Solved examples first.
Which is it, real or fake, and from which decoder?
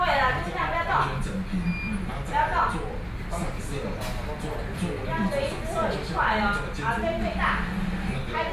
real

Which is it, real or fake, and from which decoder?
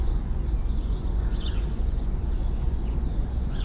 fake, vocoder, Vocos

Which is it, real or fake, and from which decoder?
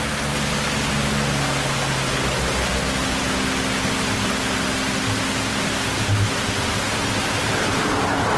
real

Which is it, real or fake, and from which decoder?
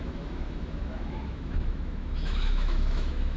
fake, autoencoder, DAC-VAE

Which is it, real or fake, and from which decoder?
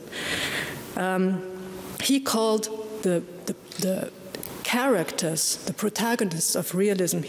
real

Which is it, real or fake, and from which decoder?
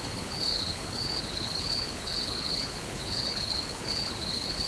fake, codec, HILCodec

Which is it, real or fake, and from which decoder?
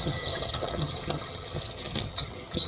fake, vocoder, HiFi-GAN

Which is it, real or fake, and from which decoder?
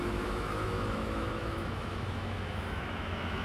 fake, autoencoder, DAC-VAE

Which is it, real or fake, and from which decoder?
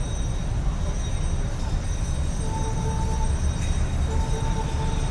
real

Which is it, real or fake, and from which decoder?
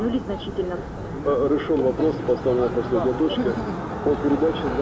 real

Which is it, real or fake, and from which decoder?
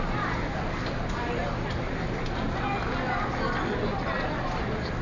real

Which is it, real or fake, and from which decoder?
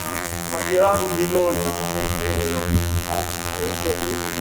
fake, vocoder, BigVGAN v2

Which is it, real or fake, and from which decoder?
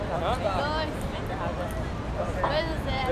real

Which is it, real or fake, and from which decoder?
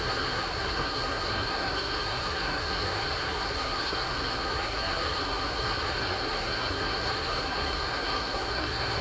fake, codec, SNAC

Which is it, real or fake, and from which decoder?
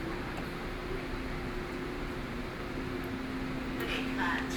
real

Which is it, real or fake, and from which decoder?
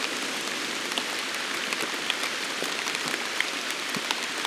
fake, vocoder, BigVGAN v2